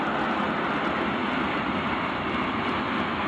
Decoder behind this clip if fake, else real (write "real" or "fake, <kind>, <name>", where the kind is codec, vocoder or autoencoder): real